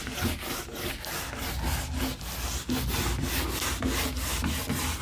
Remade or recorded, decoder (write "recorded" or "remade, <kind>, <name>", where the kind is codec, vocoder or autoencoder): recorded